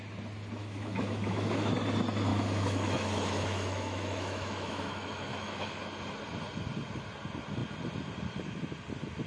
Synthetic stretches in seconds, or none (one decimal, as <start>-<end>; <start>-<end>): 0.6-1.7; 2.3-5.8

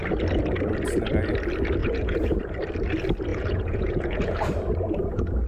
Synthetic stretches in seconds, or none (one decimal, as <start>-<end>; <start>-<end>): 1.8-2.4; 3.3-4.5

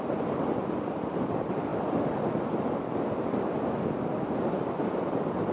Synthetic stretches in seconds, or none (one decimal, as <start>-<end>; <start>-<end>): none

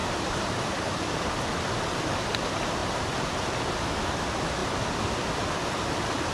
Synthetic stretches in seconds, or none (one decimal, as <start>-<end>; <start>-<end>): 0.0-0.7; 2.8-3.6

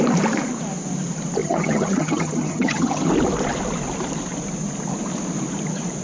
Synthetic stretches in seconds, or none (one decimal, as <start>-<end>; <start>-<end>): 1.4-3.1

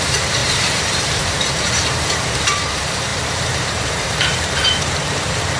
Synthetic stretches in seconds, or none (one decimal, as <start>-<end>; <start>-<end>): 0.0-5.6

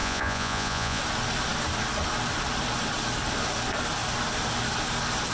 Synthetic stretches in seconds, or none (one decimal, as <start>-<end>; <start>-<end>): 0.0-1.0

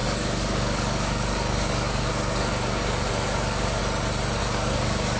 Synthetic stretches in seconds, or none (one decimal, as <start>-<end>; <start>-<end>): 0.0-3.8; 4.4-5.2